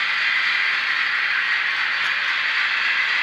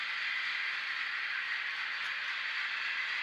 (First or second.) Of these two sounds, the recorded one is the first